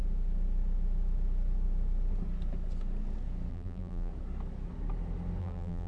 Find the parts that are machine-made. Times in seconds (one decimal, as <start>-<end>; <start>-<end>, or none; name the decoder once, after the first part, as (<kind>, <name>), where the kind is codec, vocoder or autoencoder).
3.5-4.1 (vocoder, BigVGAN v2); 5.4-5.9